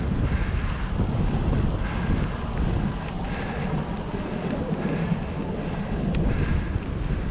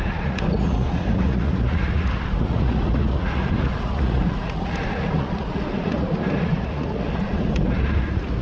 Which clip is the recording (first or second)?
first